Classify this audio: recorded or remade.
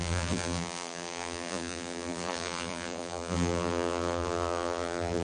remade